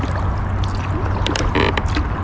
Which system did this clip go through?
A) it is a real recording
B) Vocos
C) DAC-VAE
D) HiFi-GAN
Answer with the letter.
A